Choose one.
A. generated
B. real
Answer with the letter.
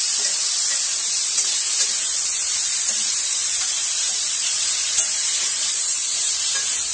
A